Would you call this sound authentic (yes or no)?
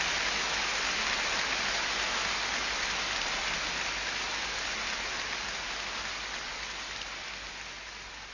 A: yes